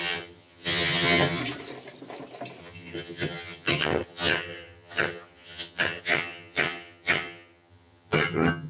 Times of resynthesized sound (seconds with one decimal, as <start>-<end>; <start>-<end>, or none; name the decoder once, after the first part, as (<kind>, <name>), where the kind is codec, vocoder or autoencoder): 0.0-1.4 (vocoder, HiFi-GAN); 2.6-8.7